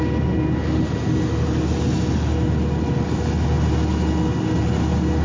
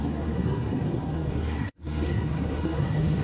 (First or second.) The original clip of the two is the first